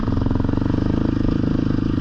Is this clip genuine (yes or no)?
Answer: yes